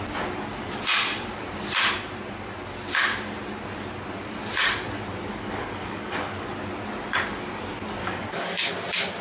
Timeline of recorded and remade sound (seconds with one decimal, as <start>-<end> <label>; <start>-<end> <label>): 0.0-5.3 recorded; 5.3-6.5 remade; 6.5-8.0 recorded; 8.0-8.7 remade; 8.7-9.2 recorded